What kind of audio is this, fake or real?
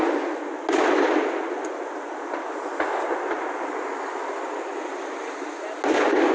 real